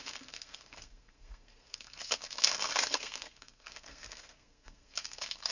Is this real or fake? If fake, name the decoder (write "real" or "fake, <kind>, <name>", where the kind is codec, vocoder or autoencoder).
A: fake, codec, SNAC